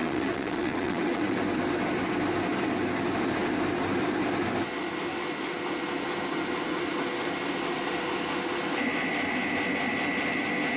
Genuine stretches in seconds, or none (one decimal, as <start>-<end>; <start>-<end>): 1.4-10.8